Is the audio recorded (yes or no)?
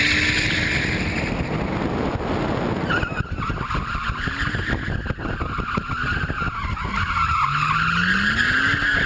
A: yes